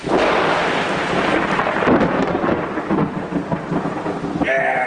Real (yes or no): yes